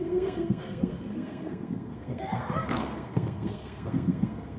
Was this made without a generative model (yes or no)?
no